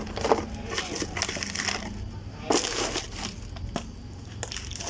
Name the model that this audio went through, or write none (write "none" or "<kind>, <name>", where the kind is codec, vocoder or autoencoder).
none